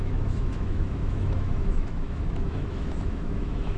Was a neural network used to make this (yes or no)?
yes